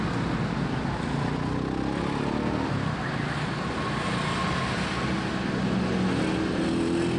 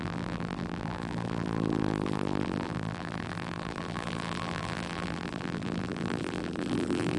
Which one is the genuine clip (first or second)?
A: first